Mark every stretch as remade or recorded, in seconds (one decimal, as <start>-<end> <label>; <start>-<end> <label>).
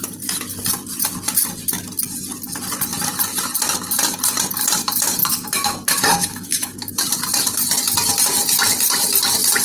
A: 0.0-5.2 recorded; 5.2-6.9 remade; 6.9-9.6 recorded